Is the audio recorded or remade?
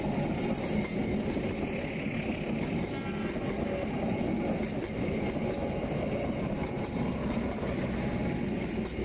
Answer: recorded